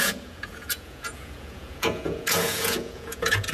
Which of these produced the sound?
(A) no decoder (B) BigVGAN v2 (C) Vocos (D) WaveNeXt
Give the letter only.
C